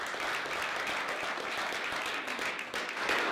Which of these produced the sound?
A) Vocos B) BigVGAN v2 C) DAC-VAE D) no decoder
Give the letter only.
D